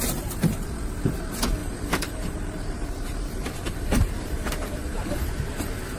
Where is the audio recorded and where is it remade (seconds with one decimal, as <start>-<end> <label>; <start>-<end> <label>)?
0.0-1.6 recorded; 1.6-5.2 remade; 5.2-6.0 recorded